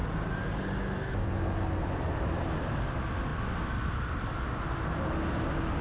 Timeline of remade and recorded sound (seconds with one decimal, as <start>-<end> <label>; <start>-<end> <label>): 0.0-5.8 recorded